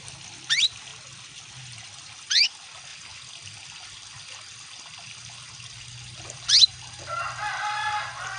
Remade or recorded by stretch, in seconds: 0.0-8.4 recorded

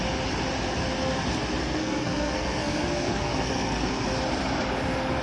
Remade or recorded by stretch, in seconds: 0.0-1.6 recorded; 1.6-3.9 remade; 3.9-5.2 recorded

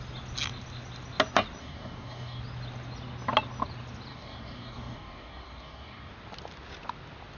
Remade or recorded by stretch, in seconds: 0.0-1.6 recorded; 1.6-2.4 remade; 2.4-4.1 recorded; 4.1-6.1 remade; 6.1-7.4 recorded

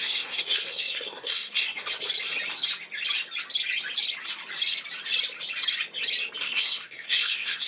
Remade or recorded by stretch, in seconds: 0.0-1.8 remade; 1.8-6.4 recorded; 6.4-7.7 remade

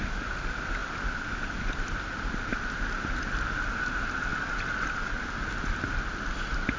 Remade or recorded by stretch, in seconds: 0.0-6.8 recorded

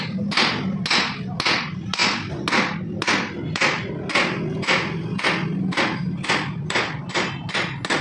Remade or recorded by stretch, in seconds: 0.0-8.0 recorded